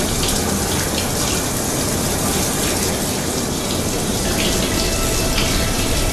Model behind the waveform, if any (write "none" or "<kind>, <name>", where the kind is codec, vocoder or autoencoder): none